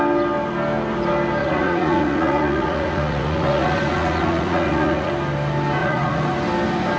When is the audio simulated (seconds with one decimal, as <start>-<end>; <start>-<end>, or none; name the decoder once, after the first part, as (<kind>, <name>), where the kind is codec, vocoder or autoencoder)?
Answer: 1.4-5.1 (vocoder, Vocos); 5.8-6.3